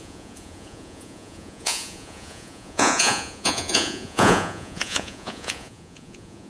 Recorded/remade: remade